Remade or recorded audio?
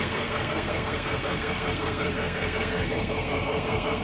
remade